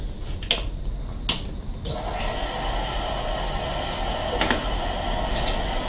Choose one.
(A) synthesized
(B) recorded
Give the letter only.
B